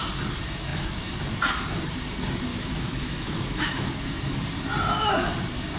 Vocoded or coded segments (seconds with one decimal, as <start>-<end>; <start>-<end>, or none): 2.5-3.9

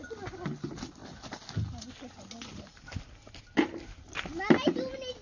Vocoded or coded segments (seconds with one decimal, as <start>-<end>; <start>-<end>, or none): none

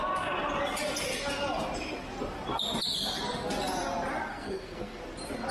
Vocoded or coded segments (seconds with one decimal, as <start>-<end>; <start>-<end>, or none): 4.3-5.0

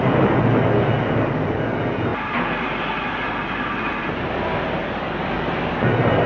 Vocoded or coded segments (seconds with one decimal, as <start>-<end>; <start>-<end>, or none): 4.8-5.5

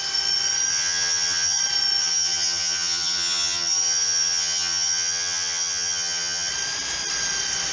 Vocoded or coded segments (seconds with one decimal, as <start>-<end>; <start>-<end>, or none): 0.7-1.6; 2.0-6.5